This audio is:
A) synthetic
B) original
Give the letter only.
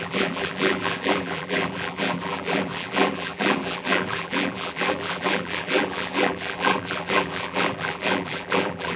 A